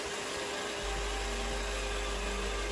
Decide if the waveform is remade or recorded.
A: recorded